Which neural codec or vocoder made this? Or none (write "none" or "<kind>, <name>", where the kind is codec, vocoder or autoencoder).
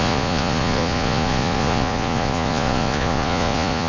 vocoder, Vocos